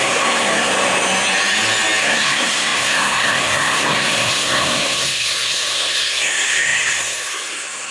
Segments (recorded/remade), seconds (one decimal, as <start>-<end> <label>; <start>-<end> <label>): 0.0-0.7 remade; 0.7-2.0 recorded; 2.0-7.9 remade

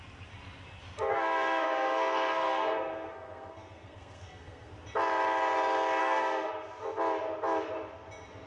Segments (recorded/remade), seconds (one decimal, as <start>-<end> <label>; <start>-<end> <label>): 0.0-1.1 recorded; 1.1-4.7 remade; 4.7-6.0 recorded; 6.0-6.5 remade; 6.5-8.5 recorded